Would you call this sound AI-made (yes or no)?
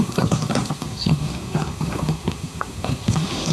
yes